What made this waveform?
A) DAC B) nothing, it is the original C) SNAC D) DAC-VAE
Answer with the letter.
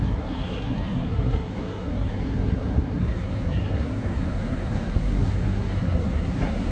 C